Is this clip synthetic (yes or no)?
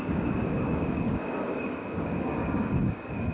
yes